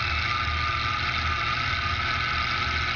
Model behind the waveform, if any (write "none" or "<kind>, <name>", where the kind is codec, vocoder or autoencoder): none